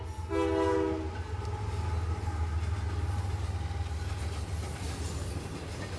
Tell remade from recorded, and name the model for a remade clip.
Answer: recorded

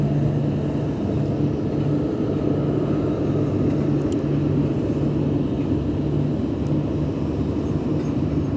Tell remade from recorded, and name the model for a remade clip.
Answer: recorded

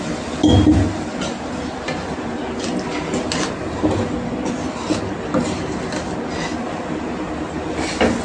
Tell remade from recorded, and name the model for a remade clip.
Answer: recorded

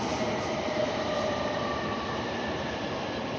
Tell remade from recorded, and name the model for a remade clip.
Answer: remade, vocoder, BigVGAN v2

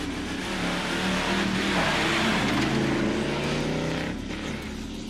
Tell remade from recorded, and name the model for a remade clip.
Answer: recorded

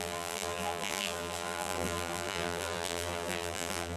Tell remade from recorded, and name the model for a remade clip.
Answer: remade, vocoder, BigVGAN v2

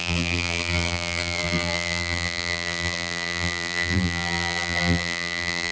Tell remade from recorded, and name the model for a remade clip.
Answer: remade, vocoder, BigVGAN v2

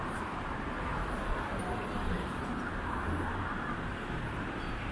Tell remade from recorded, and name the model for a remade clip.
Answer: remade, vocoder, BigVGAN v2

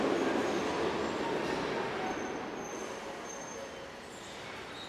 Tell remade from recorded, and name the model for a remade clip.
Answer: recorded